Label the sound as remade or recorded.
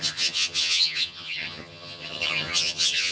remade